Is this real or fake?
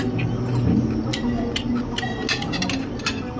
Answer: real